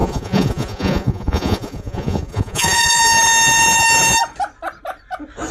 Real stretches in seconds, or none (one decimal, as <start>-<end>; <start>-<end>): 3.0-5.5